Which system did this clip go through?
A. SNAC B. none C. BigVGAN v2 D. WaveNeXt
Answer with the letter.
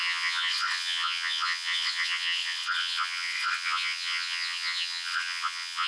D